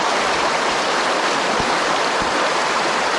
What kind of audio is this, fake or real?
fake